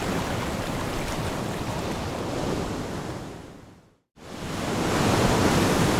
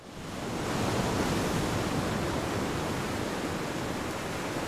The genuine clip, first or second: second